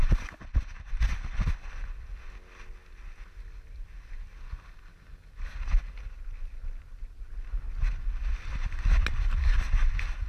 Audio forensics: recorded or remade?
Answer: recorded